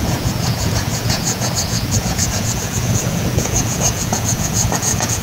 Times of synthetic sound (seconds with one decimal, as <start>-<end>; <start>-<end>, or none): 0.0-5.2